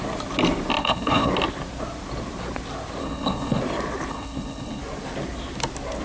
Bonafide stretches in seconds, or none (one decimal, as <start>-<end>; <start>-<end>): 0.0-0.8; 1.3-3.0; 3.6-4.1; 4.8-6.0